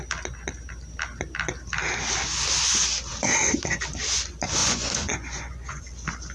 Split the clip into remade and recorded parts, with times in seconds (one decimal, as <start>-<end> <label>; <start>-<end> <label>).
0.0-4.6 recorded; 4.6-5.8 remade; 5.8-6.3 recorded